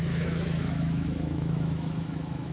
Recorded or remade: remade